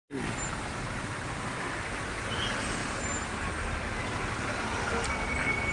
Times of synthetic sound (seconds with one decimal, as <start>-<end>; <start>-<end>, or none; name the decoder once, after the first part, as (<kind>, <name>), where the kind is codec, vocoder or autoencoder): none